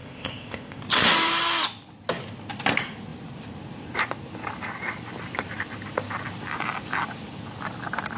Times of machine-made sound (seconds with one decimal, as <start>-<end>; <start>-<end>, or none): 0.0-0.8